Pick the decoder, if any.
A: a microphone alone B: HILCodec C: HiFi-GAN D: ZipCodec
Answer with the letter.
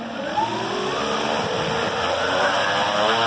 A